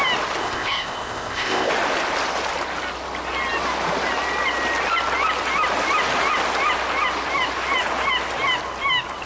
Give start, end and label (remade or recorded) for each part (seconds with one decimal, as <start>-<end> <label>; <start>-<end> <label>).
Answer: 0.0-0.4 recorded; 0.4-1.7 remade; 1.7-9.3 recorded

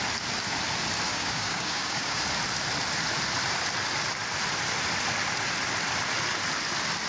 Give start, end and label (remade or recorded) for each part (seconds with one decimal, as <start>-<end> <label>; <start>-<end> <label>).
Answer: 0.0-1.1 recorded; 1.1-2.2 remade; 2.2-7.1 recorded